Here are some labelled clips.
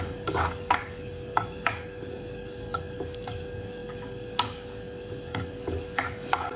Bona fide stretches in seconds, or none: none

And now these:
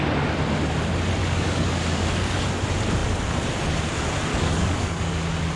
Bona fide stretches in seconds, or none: 0.0-1.2; 2.4-4.3; 5.1-5.6

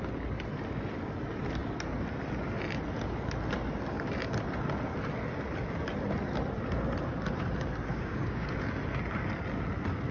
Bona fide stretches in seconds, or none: 0.0-7.9; 8.5-10.1

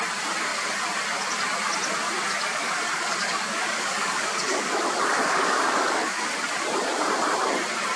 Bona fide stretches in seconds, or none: 0.0-2.5; 6.4-8.0